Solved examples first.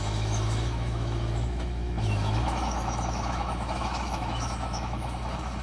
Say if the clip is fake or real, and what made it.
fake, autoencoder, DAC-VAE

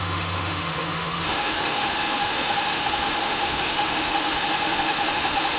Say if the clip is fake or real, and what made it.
fake, autoencoder, DAC-VAE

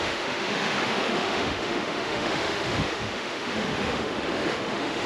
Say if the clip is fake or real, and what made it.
fake, autoencoder, DAC-VAE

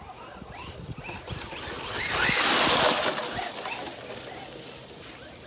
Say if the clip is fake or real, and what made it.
real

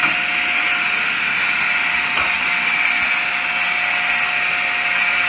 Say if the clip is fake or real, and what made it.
real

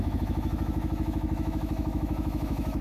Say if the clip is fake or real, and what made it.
fake, autoencoder, DAC-VAE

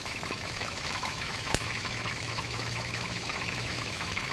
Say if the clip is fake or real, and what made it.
fake, autoencoder, DAC-VAE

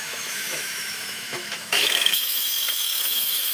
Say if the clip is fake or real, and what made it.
fake, autoencoder, DAC-VAE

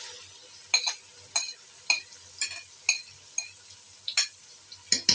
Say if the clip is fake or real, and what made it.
real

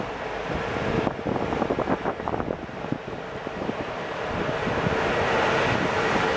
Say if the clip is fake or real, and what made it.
real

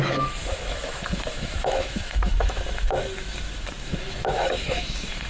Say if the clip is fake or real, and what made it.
fake, autoencoder, DAC-VAE